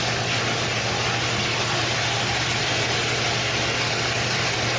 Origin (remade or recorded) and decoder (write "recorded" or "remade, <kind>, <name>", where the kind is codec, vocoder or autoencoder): recorded